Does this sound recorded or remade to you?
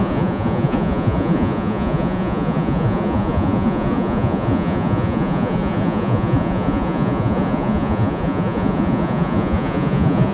remade